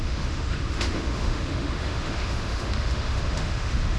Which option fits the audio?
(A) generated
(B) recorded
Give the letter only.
A